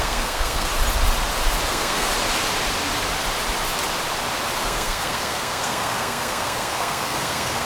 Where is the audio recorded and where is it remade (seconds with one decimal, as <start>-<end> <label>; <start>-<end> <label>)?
0.0-0.7 remade; 0.7-1.7 recorded; 1.7-2.1 remade; 2.1-4.6 recorded; 4.6-7.7 remade